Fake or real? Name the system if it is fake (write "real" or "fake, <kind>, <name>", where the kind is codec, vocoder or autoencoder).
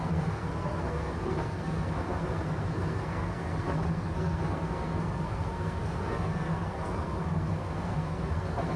fake, codec, SNAC